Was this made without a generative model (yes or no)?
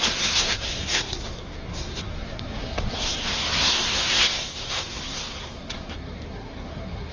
no